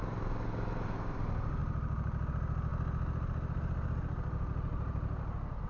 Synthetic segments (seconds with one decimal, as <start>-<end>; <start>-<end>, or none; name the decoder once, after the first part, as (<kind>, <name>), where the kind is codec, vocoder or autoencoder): none